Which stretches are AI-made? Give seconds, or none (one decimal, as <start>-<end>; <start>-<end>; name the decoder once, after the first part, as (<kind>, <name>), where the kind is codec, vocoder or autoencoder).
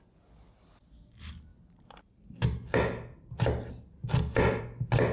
none